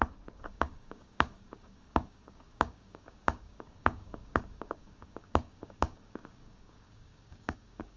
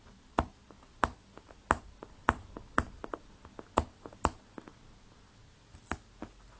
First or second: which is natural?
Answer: second